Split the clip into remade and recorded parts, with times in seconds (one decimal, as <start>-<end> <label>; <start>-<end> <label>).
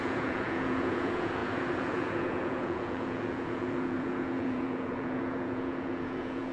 0.0-6.5 remade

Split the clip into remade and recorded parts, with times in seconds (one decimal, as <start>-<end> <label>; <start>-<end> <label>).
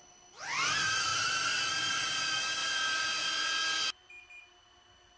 0.0-1.1 recorded; 1.1-1.7 remade; 1.7-2.6 recorded; 2.6-3.3 remade; 3.3-5.2 recorded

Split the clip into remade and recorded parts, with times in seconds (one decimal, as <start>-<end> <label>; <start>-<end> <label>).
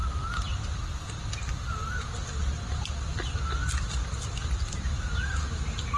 0.0-6.0 recorded